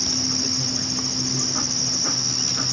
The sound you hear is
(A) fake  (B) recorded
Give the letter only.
B